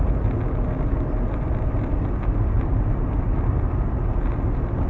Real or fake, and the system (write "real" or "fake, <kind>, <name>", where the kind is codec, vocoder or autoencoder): real